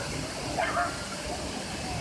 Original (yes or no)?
yes